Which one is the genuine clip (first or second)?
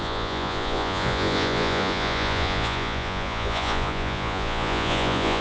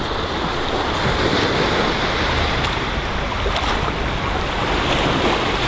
second